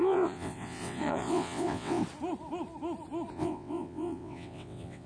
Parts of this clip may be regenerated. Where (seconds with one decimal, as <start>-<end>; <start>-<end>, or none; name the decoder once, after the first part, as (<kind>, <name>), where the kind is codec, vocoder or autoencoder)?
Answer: 0.0-2.0 (vocoder, WaveNeXt); 3.3-5.1